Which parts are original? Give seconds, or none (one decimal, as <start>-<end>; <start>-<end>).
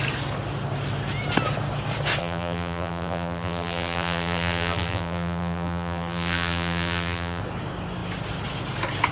0.0-2.2; 7.4-9.1